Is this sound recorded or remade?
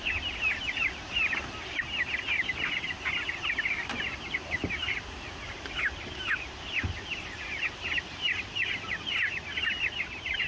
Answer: recorded